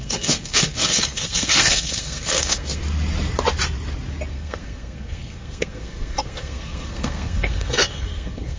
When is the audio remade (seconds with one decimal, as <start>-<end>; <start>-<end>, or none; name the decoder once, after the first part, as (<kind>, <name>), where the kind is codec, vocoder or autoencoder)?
0.0-2.8 (codec, SNAC); 4.3-8.6